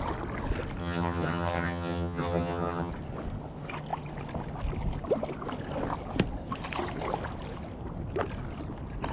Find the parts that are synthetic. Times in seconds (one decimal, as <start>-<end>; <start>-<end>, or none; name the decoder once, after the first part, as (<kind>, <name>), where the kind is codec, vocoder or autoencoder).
0.8-2.9 (vocoder, HiFi-GAN)